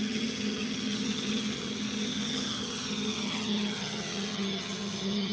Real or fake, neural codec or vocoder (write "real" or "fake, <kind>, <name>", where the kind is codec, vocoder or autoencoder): fake, vocoder, HiFi-GAN